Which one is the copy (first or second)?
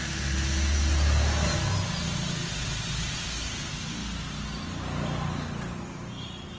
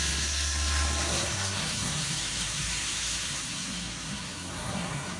second